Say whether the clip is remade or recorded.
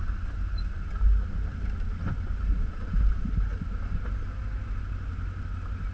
recorded